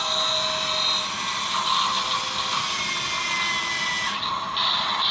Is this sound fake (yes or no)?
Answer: no